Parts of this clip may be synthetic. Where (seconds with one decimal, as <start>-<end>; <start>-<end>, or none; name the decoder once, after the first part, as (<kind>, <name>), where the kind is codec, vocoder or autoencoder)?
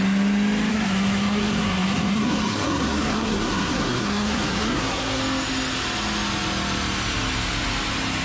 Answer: 0.7-5.2 (codec, SNAC)